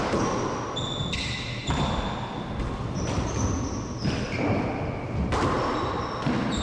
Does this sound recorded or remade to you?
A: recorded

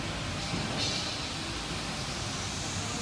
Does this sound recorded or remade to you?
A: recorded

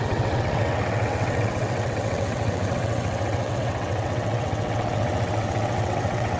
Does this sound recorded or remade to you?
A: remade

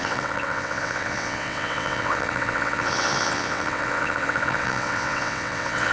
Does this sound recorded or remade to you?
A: remade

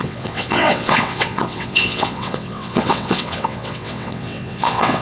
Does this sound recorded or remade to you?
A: remade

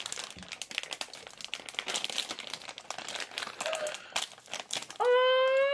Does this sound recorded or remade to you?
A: recorded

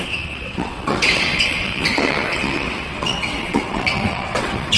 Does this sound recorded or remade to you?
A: remade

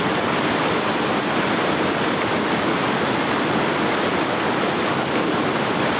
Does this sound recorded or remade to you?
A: recorded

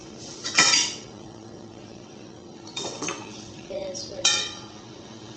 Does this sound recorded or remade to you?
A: remade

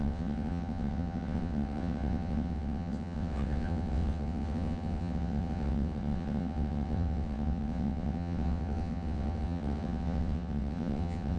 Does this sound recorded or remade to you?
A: remade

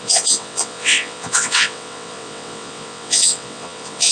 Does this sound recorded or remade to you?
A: remade